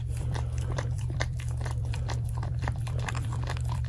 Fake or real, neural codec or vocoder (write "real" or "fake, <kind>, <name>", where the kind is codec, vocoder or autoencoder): fake, vocoder, BigVGAN v2